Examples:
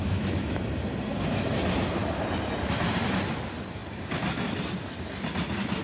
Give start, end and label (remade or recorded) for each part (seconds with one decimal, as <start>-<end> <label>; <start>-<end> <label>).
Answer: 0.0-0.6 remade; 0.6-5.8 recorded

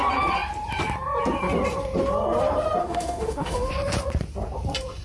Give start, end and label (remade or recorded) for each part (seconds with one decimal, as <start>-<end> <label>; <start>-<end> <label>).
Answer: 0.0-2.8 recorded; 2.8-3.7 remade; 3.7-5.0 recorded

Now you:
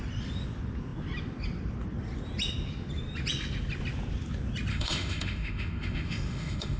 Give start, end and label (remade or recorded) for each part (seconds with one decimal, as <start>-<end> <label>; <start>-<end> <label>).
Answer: 0.0-4.7 recorded; 4.7-6.8 remade

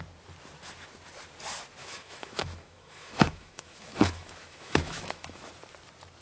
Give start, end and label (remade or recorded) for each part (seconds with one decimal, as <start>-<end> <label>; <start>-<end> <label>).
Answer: 0.0-1.8 recorded; 1.8-5.5 remade; 5.5-6.2 recorded

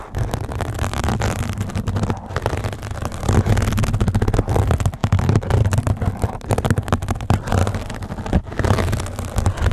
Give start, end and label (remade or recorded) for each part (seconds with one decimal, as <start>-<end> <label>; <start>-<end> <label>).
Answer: 0.0-9.7 recorded

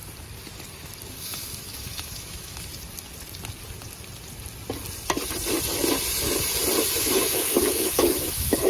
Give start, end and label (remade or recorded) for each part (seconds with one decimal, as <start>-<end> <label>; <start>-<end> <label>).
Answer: 0.0-1.1 recorded; 1.1-2.7 remade; 2.7-7.0 recorded; 7.0-8.7 remade

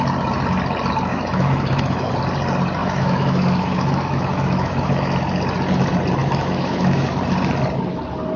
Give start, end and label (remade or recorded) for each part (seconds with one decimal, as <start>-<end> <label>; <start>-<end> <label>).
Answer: 0.0-1.1 recorded; 1.1-2.1 remade; 2.1-2.8 recorded; 2.8-5.2 remade; 5.2-6.2 recorded; 6.2-7.1 remade; 7.1-8.4 recorded

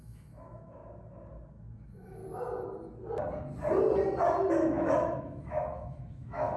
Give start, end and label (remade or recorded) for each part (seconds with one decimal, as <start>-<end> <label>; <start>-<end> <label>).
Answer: 0.0-0.8 remade; 0.8-1.5 recorded; 1.5-2.2 remade; 2.2-4.5 recorded; 4.5-6.6 remade